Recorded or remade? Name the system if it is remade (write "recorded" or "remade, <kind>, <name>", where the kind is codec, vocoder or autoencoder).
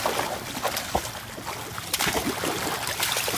recorded